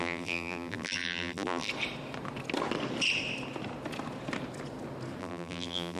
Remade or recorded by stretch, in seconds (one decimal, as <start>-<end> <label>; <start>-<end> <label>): 0.0-1.7 remade; 1.7-5.2 recorded; 5.2-6.0 remade